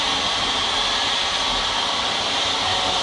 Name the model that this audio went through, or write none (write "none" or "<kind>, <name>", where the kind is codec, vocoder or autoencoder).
none